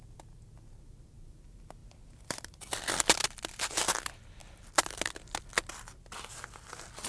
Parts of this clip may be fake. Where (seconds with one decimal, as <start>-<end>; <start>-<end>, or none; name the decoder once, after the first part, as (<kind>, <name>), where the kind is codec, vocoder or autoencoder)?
none